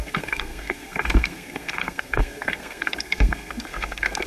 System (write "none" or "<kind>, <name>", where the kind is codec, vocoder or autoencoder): codec, SNAC